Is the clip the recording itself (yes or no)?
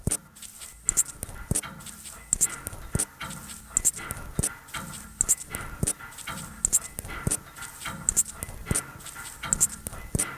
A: yes